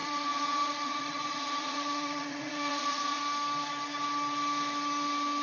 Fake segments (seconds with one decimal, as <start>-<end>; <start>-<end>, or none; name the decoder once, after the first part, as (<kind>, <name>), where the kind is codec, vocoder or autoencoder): 0.0-3.2 (vocoder, Vocos)

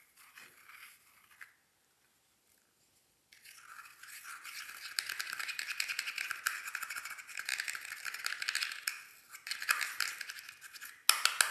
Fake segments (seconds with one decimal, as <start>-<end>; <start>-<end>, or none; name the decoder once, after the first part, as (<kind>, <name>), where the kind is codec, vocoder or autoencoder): none

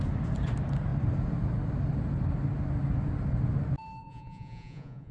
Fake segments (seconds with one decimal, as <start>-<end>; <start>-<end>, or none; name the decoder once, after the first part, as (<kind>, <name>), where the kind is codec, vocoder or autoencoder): 4.0-5.1 (vocoder, Vocos)

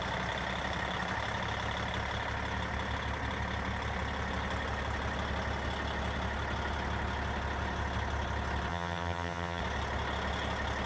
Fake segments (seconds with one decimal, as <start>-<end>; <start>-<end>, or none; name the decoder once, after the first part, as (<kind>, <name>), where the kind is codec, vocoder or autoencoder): 8.7-9.6 (vocoder, HiFi-GAN)